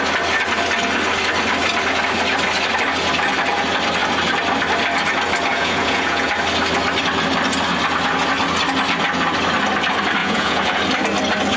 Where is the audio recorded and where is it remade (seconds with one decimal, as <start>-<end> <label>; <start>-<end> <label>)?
0.0-5.5 recorded; 5.5-6.3 remade; 6.3-10.2 recorded; 10.2-10.8 remade; 10.8-11.6 recorded